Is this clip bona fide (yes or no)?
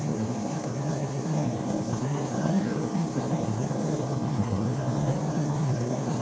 no